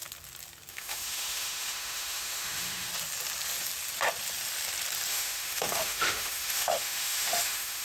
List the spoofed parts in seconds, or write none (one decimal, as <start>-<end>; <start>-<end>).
0.7-2.9; 5.1-7.8